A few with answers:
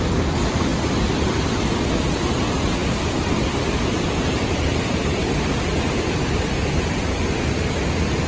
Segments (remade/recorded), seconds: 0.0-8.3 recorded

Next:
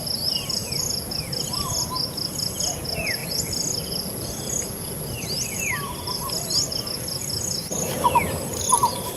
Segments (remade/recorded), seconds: 0.0-9.2 recorded

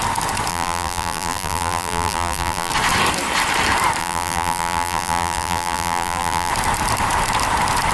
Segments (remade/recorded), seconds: 0.0-0.5 recorded; 0.5-2.7 remade; 2.7-4.0 recorded; 4.0-6.5 remade; 6.5-7.9 recorded

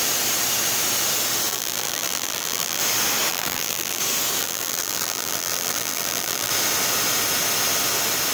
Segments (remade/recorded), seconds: 0.0-1.5 recorded; 1.5-2.8 remade; 2.8-3.3 recorded; 3.3-4.0 remade; 4.0-4.4 recorded; 4.4-6.5 remade; 6.5-8.3 recorded

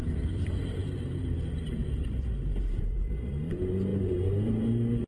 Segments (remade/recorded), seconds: 0.0-5.1 remade

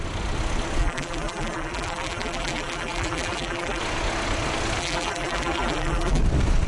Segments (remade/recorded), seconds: 0.0-0.8 recorded; 0.8-3.8 remade; 3.8-4.8 recorded; 4.8-6.2 remade; 6.2-6.7 recorded

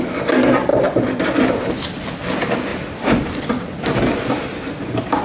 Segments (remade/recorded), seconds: 0.0-0.7 recorded; 0.7-1.7 remade; 1.7-2.7 recorded; 2.7-3.3 remade; 3.3-4.1 recorded; 4.1-5.2 remade

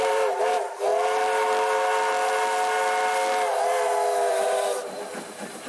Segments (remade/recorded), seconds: 0.0-0.9 remade; 0.9-4.3 recorded; 4.3-5.7 remade